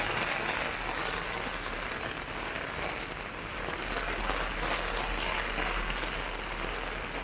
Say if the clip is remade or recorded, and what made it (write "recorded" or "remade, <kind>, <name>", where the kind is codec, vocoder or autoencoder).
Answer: recorded